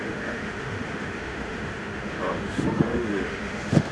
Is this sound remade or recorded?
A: remade